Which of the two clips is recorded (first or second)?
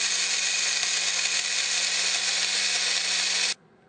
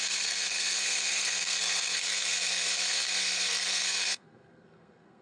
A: first